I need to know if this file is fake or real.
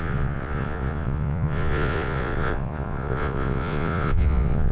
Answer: fake